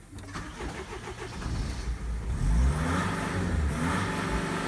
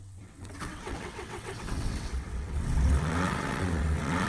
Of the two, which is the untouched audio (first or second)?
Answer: first